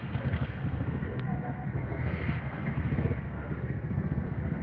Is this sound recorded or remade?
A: remade